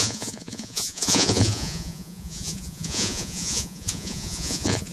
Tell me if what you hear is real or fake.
fake